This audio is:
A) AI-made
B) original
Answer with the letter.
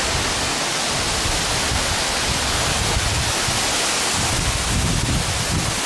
B